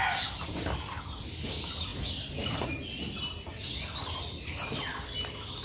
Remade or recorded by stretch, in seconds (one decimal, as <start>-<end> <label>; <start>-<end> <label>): 0.0-5.6 recorded